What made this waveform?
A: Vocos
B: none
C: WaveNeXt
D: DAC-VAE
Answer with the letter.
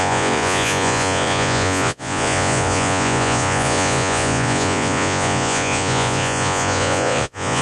A